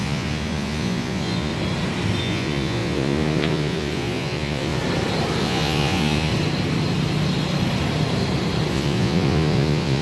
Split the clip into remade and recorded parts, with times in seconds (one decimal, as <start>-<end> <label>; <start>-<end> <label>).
0.0-1.5 remade; 1.5-2.2 recorded; 2.2-4.8 remade; 4.8-5.4 recorded; 5.4-6.3 remade; 6.3-8.7 recorded; 8.7-10.0 remade